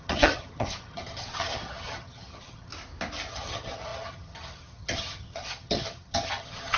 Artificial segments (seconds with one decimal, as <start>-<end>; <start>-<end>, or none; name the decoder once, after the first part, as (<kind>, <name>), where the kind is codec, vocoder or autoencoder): 0.0-2.7 (vocoder, HiFi-GAN); 3.3-6.8